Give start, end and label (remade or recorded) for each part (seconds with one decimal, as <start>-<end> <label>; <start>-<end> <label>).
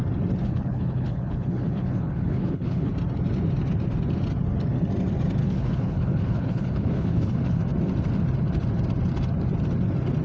0.0-0.4 recorded; 0.4-2.9 remade; 2.9-5.4 recorded; 5.4-7.6 remade; 7.6-10.2 recorded